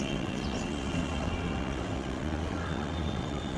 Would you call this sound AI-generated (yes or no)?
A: yes